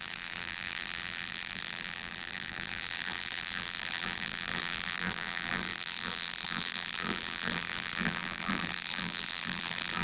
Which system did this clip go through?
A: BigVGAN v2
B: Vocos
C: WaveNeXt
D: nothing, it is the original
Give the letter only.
A